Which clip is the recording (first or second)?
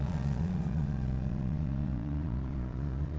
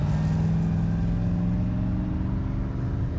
second